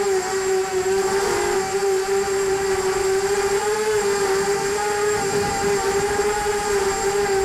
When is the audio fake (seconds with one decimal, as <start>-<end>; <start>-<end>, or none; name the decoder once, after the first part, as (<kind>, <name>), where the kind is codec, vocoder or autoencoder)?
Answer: 0.0-7.4 (vocoder, BigVGAN v2)